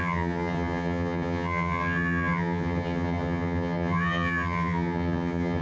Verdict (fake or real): fake